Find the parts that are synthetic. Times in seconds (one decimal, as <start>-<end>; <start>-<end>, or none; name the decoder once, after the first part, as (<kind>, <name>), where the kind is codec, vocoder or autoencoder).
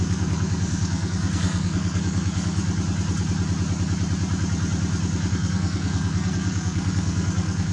0.0-2.6 (codec, SNAC); 5.3-7.7